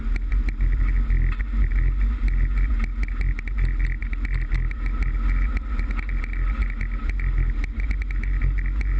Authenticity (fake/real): real